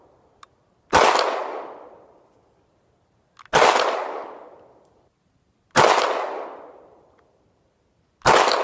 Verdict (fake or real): real